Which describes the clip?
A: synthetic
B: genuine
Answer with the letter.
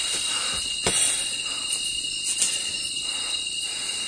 B